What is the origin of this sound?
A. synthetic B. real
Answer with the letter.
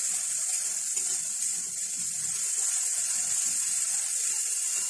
B